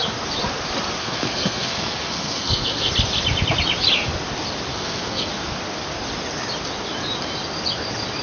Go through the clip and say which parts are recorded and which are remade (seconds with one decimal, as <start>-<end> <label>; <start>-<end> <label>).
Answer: 0.0-1.0 recorded; 1.0-2.9 remade; 2.9-4.7 recorded; 4.7-5.3 remade; 5.3-8.2 recorded